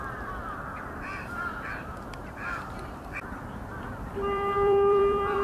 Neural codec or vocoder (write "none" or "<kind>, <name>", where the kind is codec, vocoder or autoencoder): vocoder, BigVGAN v2